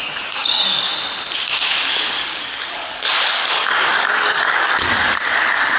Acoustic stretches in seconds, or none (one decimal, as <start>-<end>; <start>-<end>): 0.9-1.9